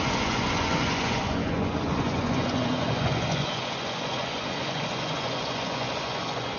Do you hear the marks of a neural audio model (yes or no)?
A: yes